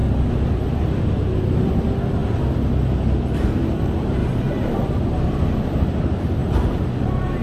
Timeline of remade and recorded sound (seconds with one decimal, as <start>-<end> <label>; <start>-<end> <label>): 0.0-4.2 recorded; 4.2-6.0 remade; 6.0-6.4 recorded; 6.4-7.4 remade